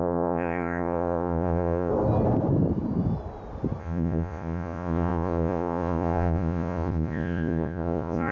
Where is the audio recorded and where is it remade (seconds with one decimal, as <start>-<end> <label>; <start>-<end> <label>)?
0.0-1.9 remade; 1.9-3.8 recorded; 3.8-8.3 remade